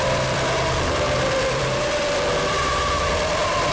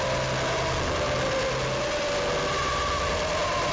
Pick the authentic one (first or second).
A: second